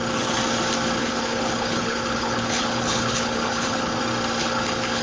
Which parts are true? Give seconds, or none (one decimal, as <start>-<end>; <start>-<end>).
0.0-1.0; 4.0-4.4